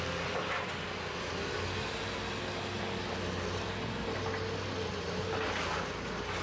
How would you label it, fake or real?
real